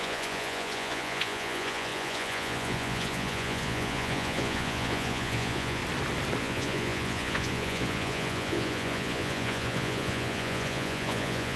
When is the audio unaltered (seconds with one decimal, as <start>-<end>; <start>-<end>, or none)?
5.8-6.4